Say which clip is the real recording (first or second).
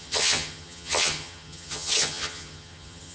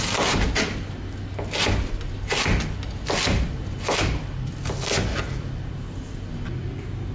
second